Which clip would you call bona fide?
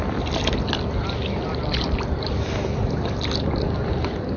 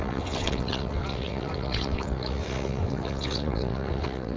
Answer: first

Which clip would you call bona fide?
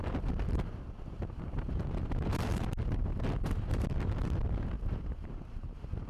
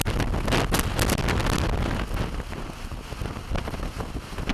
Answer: second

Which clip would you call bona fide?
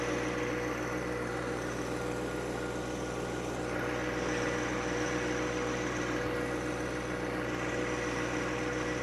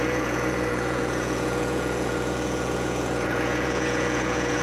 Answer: first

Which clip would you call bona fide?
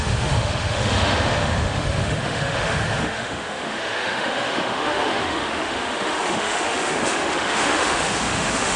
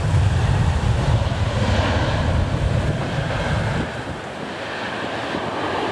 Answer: second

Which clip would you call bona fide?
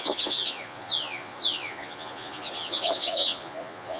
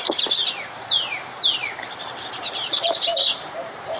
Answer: second